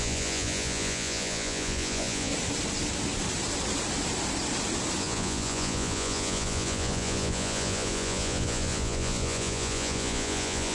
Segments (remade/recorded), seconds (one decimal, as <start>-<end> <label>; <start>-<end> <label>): 0.0-2.3 remade; 2.3-5.0 recorded; 5.0-10.7 remade